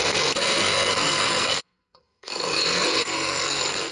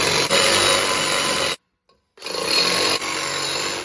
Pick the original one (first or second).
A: second